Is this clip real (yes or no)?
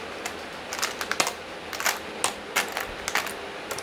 yes